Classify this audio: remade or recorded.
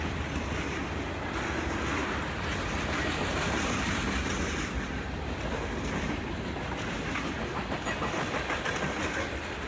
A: recorded